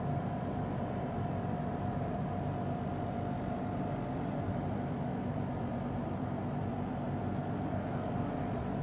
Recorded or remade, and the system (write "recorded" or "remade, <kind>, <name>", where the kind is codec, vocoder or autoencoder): remade, vocoder, BigVGAN v2